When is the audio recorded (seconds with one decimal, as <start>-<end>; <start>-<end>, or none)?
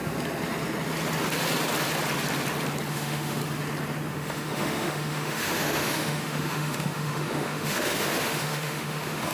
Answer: 0.0-2.9; 3.4-4.1